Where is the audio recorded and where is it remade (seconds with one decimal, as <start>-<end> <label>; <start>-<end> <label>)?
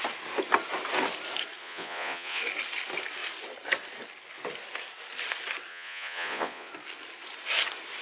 0.0-1.6 recorded; 1.6-2.4 remade; 2.4-5.7 recorded; 5.7-6.7 remade; 6.7-8.0 recorded